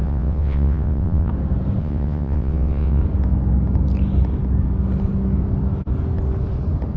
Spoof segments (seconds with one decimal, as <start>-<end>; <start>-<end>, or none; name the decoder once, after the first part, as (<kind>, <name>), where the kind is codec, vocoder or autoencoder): 0.0-1.3 (vocoder, WaveNeXt); 1.8-3.0